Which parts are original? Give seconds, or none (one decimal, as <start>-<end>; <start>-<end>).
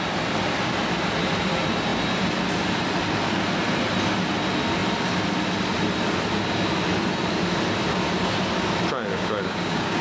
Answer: 0.0-9.1